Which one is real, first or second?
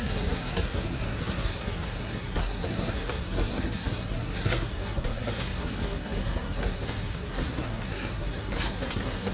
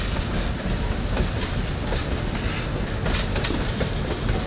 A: second